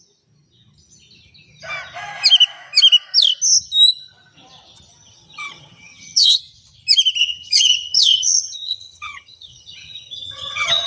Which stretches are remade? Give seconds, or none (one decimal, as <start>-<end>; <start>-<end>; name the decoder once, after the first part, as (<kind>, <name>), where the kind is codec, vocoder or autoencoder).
4.9-6.4 (vocoder, HiFi-GAN); 7.2-10.9